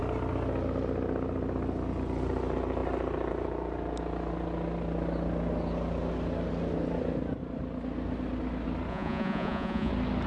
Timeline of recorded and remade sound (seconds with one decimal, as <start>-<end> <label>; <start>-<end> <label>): 0.0-8.9 recorded; 8.9-9.9 remade; 9.9-10.3 recorded

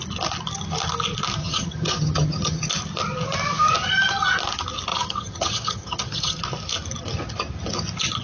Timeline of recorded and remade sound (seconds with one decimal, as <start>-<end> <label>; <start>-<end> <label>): 0.0-1.4 recorded; 1.4-2.7 remade; 2.7-4.9 recorded; 4.9-6.4 remade; 6.4-8.2 recorded

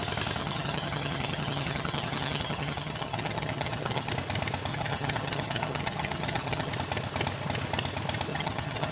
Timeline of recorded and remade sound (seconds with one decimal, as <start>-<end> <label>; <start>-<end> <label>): 0.0-0.4 recorded; 0.4-4.1 remade; 4.1-4.7 recorded; 4.7-6.7 remade; 6.7-8.3 recorded; 8.3-8.9 remade

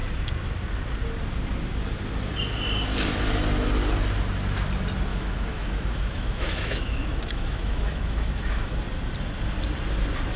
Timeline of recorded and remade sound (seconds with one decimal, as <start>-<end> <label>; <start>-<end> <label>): 0.0-5.1 recorded; 5.1-8.8 remade; 8.8-10.4 recorded